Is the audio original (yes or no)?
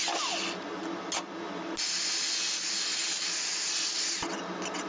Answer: yes